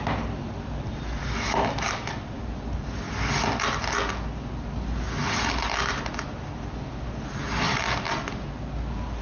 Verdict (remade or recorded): recorded